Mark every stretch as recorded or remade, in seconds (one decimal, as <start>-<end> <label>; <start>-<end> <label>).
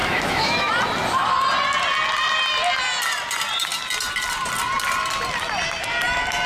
0.0-0.7 remade; 0.7-6.5 recorded